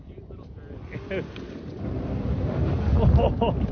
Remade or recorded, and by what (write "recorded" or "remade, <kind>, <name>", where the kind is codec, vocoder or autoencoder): recorded